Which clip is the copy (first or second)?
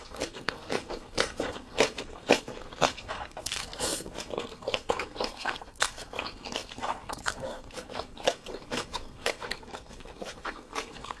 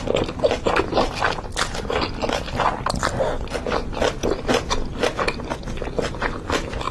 first